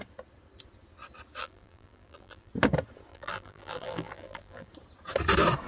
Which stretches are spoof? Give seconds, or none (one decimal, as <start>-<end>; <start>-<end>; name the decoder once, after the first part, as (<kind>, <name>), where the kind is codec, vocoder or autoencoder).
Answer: 1.4-2.5 (vocoder, BigVGAN v2); 3.1-4.7

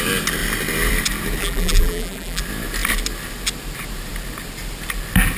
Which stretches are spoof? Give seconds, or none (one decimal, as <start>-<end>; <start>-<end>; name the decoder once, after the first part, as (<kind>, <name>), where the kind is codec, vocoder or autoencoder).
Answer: 1.4-2.4 (vocoder, BigVGAN v2)

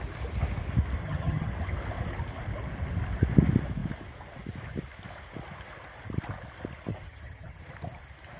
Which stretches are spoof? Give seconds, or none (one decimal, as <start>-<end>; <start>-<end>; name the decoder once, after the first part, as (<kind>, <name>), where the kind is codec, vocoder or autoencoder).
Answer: 1.0-1.5 (vocoder, HiFi-GAN); 6.9-7.6

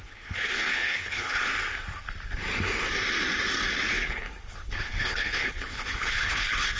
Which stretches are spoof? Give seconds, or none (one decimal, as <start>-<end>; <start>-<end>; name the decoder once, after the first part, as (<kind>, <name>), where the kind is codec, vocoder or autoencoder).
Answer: 0.0-1.5 (codec, HILCodec); 3.9-6.8

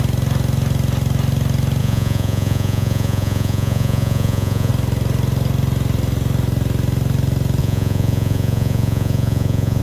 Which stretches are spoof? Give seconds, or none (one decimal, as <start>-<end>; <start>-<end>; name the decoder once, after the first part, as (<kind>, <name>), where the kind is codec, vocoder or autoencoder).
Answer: 1.8-4.7 (vocoder, Vocos); 7.6-9.8

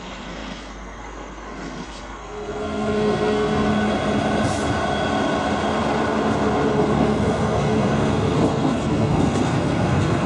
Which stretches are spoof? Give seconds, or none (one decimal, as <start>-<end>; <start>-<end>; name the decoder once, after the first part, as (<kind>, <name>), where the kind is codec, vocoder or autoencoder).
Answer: 0.0-3.7 (codec, SNAC); 6.8-10.3

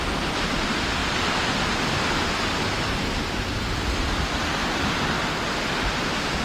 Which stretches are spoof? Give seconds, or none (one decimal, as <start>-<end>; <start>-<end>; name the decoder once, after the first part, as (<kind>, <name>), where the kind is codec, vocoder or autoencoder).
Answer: none